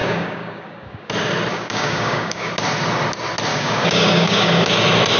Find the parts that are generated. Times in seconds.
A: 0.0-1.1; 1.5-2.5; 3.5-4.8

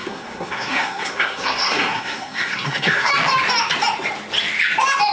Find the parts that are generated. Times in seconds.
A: 0.0-3.1

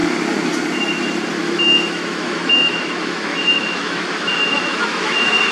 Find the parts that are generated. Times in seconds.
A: 1.3-5.5

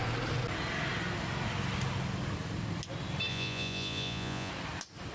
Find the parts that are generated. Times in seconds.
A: 3.3-4.5

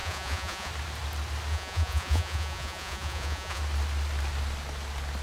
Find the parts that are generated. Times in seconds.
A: 0.0-0.7; 1.5-3.6

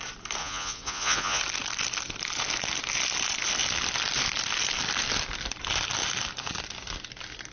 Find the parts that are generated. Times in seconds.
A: 0.4-1.4